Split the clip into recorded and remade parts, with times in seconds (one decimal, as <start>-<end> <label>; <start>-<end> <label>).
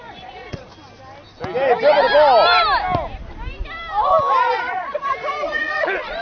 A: 0.0-0.7 remade; 0.7-4.4 recorded; 4.4-6.2 remade